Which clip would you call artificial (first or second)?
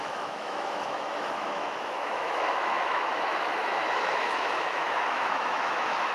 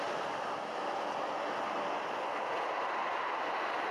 first